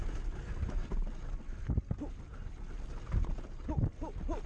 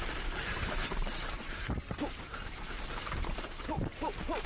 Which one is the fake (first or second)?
second